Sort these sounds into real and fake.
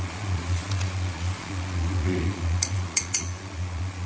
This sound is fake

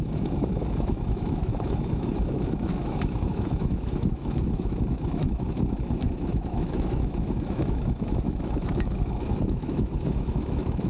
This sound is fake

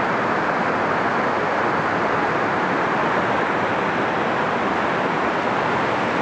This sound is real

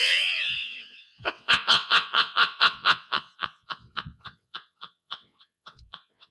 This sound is fake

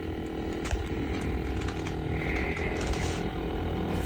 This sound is real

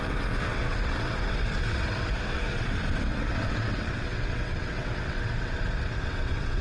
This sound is fake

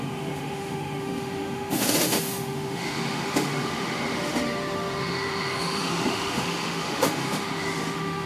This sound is fake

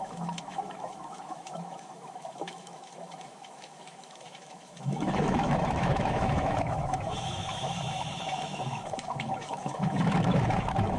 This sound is fake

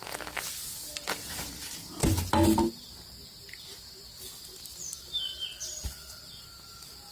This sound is real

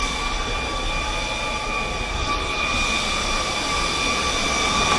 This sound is real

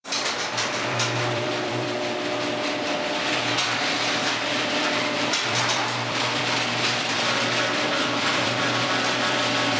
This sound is fake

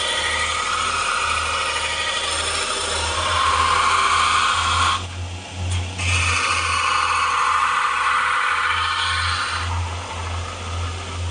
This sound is real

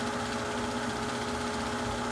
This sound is real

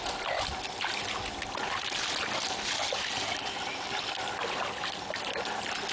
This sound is real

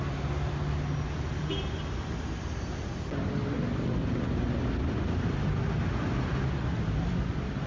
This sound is real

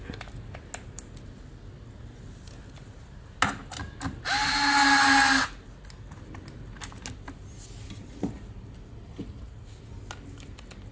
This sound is real